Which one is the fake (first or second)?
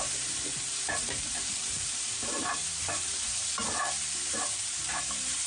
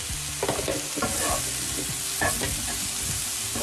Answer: first